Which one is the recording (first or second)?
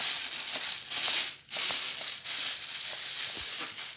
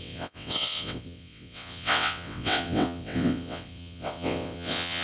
first